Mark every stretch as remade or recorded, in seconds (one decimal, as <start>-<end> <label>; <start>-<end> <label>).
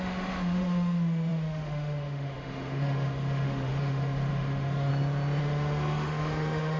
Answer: 0.0-4.9 remade; 4.9-5.4 recorded; 5.4-6.8 remade